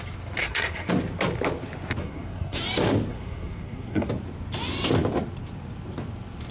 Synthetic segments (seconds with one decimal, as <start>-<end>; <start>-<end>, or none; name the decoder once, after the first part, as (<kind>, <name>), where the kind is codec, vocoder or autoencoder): 0.4-0.9 (codec, SNAC); 2.0-2.6; 3.1-4.1

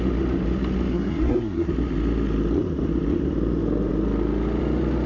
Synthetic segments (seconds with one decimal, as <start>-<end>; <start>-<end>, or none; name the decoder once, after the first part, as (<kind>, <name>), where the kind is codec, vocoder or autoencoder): 0.9-1.7 (codec, SNAC)

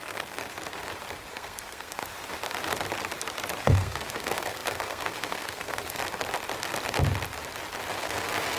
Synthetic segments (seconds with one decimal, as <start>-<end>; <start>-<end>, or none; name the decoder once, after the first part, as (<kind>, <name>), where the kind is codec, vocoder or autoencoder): 0.0-0.4 (codec, SNAC); 1.3-2.0; 3.6-6.0; 8.0-8.6